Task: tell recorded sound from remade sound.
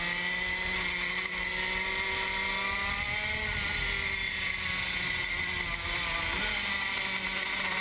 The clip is recorded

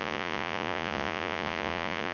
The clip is remade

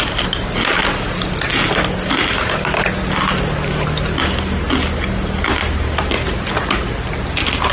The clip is recorded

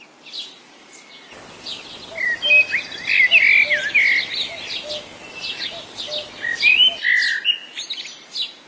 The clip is recorded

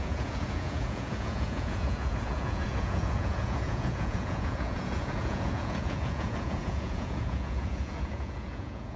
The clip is remade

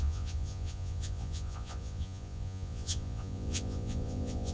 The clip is remade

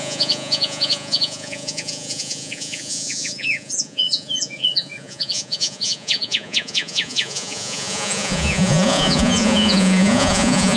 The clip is remade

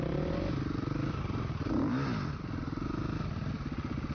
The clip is recorded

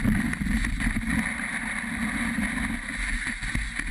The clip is recorded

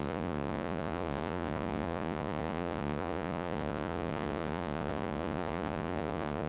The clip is remade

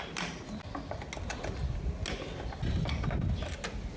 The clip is recorded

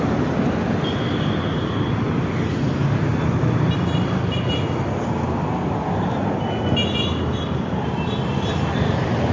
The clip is recorded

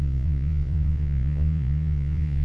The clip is remade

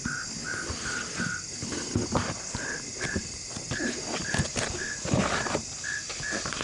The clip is recorded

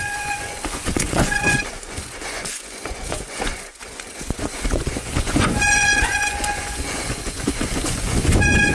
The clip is remade